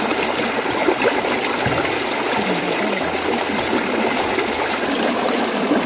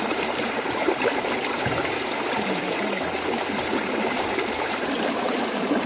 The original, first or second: first